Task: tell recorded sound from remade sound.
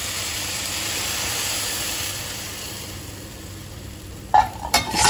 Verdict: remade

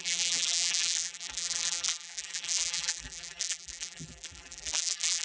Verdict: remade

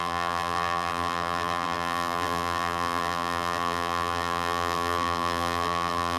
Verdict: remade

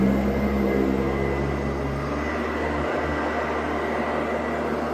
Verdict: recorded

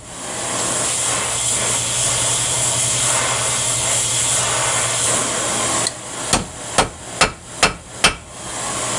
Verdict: recorded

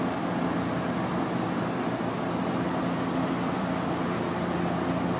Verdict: recorded